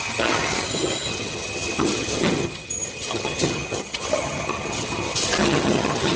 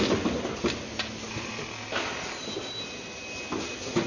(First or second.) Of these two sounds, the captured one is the second